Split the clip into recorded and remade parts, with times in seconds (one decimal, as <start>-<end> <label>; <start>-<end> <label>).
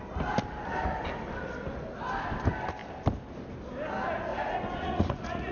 0.0-4.3 recorded; 4.3-5.5 remade